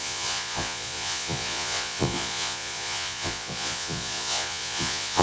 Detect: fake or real fake